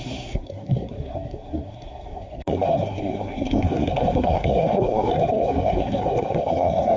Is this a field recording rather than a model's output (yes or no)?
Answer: no